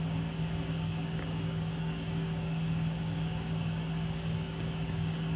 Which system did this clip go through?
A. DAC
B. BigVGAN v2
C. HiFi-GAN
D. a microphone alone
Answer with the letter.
A